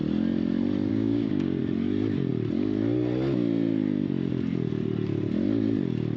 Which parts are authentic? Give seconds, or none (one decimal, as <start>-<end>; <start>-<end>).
0.0-0.9; 1.6-6.2